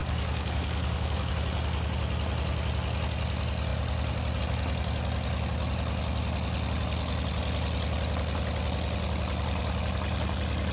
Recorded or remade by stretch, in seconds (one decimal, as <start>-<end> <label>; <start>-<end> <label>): 0.0-1.3 remade; 1.3-10.7 recorded